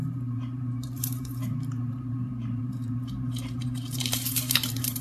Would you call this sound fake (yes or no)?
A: yes